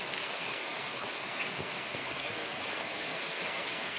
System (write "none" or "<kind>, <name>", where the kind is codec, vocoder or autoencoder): codec, SNAC